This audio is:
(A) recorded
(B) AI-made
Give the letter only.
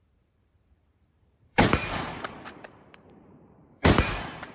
B